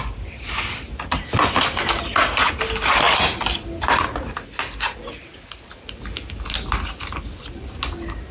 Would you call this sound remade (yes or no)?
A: no